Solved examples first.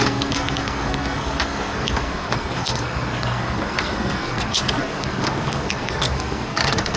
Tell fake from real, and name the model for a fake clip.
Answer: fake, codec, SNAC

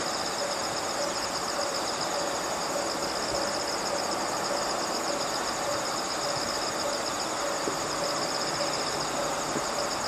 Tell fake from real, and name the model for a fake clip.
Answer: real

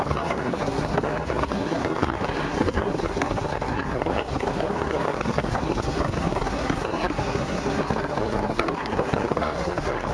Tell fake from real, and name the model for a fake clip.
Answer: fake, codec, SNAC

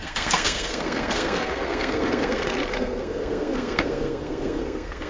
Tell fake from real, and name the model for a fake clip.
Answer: fake, codec, SNAC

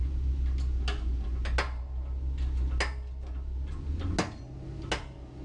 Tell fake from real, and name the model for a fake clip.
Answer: real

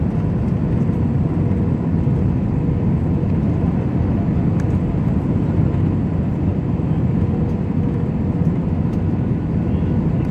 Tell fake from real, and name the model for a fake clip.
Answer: real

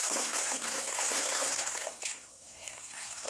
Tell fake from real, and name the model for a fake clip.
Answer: fake, codec, SNAC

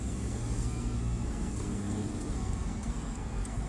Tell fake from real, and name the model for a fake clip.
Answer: fake, codec, SNAC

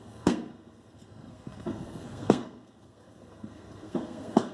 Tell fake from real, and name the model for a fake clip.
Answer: fake, codec, SNAC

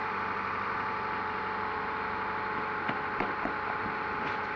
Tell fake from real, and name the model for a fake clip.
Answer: real